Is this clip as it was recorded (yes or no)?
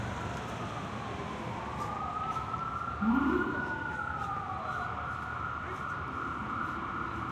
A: yes